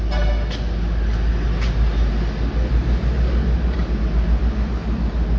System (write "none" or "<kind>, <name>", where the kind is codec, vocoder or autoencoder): none